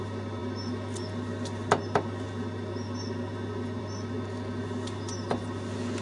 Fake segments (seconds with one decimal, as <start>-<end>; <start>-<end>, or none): none